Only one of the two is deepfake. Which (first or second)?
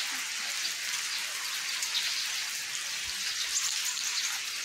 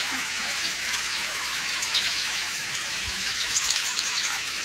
second